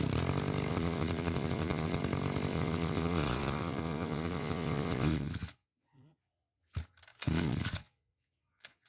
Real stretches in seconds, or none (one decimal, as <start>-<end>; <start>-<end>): 0.0-0.7; 2.0-2.5; 6.6-7.1